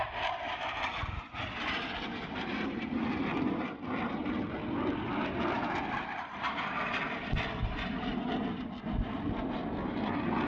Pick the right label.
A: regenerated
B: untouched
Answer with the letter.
A